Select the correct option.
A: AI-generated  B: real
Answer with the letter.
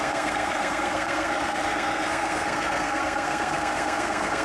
A